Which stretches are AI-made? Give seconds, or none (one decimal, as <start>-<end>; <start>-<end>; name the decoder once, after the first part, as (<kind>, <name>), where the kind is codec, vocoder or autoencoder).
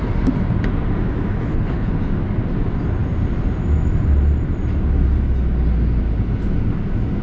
1.4-1.9 (codec, HILCodec)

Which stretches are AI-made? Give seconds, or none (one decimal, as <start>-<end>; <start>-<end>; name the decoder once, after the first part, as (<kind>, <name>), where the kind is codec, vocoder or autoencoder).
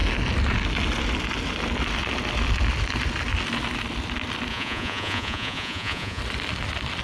4.5-6.2 (vocoder, Vocos)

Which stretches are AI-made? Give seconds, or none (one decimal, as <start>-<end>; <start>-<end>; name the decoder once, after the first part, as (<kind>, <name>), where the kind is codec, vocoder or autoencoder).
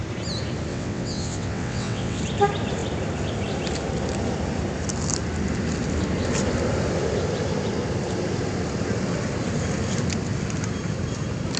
0.7-2.2 (vocoder, WaveNeXt)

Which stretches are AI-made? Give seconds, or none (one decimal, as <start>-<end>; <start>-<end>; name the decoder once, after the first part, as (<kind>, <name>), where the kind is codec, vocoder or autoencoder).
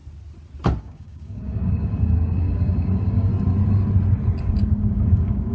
0.8-3.3 (codec, DAC); 4.4-5.5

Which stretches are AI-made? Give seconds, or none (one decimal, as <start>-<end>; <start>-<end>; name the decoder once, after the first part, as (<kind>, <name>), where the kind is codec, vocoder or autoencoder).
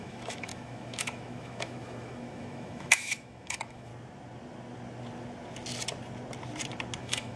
0.0-3.9 (autoencoder, DAC-VAE); 7.0-7.4